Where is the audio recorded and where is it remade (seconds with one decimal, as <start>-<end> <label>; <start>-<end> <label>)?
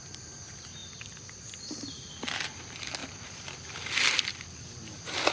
0.0-0.8 recorded; 0.8-2.1 remade; 2.1-3.0 recorded; 3.0-3.7 remade; 3.7-4.3 recorded; 4.3-5.3 remade